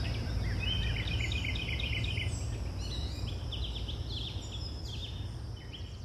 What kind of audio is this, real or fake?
real